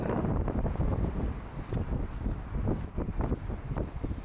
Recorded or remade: recorded